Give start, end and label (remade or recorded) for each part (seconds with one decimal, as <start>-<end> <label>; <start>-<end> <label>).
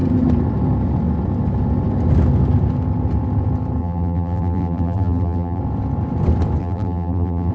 0.0-3.8 recorded; 3.8-5.6 remade; 5.6-6.6 recorded; 6.6-7.5 remade